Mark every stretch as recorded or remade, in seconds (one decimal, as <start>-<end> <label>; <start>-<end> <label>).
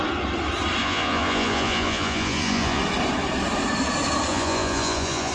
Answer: 0.0-0.8 recorded; 0.8-2.8 remade; 2.8-4.3 recorded; 4.3-5.3 remade